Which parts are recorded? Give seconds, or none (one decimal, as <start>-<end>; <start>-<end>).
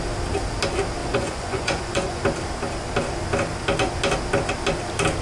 0.0-1.0; 2.2-5.2